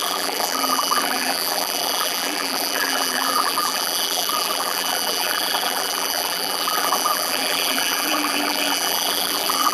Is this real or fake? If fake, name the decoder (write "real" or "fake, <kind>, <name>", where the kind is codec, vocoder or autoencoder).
fake, vocoder, BigVGAN v2